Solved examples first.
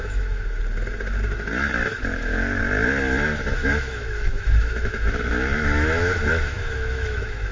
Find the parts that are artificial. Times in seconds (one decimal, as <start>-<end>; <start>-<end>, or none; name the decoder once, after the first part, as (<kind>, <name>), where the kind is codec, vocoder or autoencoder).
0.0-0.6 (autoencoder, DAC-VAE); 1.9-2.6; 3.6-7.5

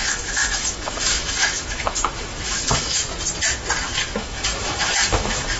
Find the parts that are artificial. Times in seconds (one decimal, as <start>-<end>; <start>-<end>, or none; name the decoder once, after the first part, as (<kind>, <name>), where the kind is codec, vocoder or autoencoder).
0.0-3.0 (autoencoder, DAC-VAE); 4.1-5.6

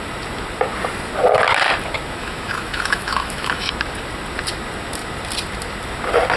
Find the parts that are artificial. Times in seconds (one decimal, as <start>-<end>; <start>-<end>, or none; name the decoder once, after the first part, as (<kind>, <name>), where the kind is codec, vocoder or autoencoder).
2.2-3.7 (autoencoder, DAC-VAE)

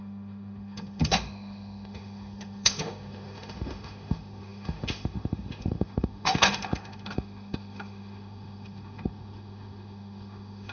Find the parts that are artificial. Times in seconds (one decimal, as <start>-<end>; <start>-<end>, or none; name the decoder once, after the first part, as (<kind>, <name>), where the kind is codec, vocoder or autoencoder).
0.0-10.7 (autoencoder, DAC-VAE)

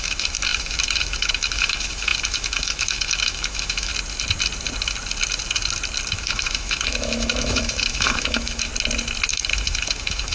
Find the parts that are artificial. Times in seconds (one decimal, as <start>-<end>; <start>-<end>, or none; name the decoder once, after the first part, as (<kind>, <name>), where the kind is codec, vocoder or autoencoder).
0.0-3.9 (autoencoder, DAC-VAE); 6.1-8.7; 9.3-10.3